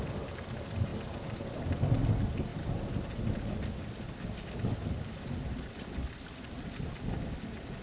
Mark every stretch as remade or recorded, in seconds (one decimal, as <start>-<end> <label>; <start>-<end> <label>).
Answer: 0.0-7.8 recorded